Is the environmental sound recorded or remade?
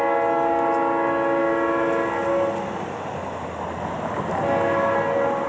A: recorded